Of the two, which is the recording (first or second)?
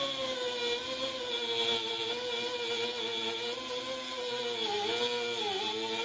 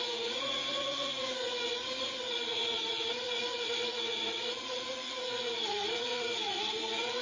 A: first